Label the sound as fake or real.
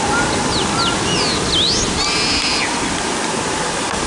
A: real